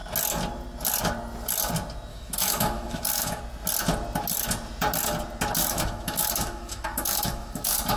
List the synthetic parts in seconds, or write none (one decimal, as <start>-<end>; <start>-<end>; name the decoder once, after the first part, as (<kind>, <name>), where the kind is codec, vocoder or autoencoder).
2.1-3.4 (autoencoder, DAC-VAE); 5.6-8.0